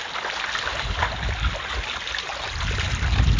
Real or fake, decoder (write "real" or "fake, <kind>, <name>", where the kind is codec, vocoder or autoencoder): real